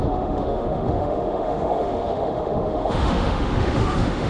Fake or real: fake